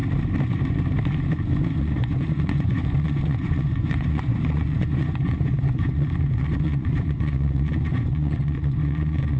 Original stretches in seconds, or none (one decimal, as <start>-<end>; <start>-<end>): 0.0-1.8